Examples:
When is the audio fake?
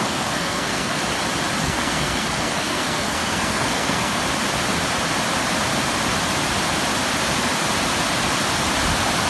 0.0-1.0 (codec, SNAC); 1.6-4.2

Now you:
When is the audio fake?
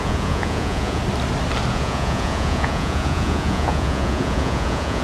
0.0-1.0 (vocoder, Vocos); 1.7-5.0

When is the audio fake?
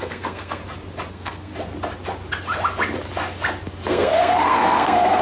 0.0-0.6 (codec, SNAC); 1.1-1.5; 3.9-5.2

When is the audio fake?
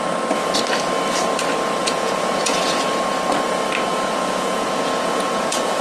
1.8-2.8 (vocoder, Vocos); 3.9-5.8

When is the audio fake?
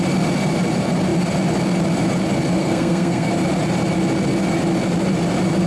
2.6-3.3 (codec, SNAC)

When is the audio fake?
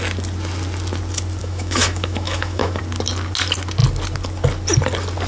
1.4-2.8 (autoencoder, DAC-VAE)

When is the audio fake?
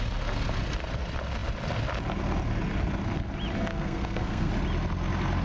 3.7-4.5 (codec, SNAC)